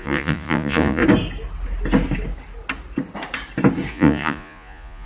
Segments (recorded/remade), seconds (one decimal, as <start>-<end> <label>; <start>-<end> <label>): 0.0-1.0 remade; 1.0-3.9 recorded; 3.9-5.0 remade